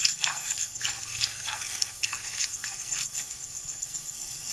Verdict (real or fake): fake